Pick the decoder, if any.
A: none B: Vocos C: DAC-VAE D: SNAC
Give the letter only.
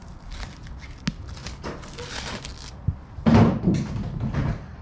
A